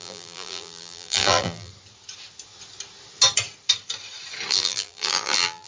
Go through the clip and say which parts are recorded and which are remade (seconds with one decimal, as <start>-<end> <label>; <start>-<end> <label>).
0.0-1.7 remade; 1.7-4.5 recorded; 4.5-5.7 remade